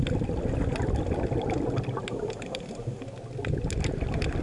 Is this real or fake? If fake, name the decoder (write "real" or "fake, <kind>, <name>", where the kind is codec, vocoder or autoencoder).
real